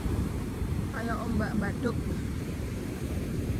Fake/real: fake